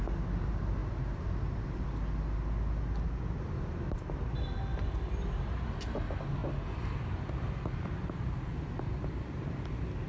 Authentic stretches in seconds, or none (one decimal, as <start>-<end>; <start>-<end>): 0.0-10.1